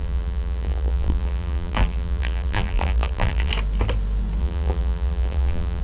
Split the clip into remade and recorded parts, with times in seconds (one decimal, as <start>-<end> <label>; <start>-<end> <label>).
0.0-3.5 remade; 3.5-4.4 recorded; 4.4-5.8 remade